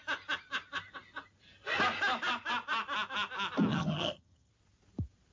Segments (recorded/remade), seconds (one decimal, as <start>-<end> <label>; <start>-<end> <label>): 0.0-3.7 recorded; 3.7-4.5 remade; 4.5-5.3 recorded